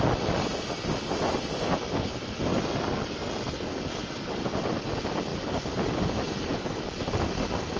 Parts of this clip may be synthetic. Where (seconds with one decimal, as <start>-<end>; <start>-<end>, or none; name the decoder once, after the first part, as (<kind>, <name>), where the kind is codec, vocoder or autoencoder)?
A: none